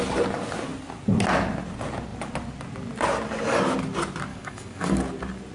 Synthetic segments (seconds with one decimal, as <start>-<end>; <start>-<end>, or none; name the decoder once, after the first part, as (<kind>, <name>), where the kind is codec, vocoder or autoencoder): 4.3-5.0 (codec, DAC)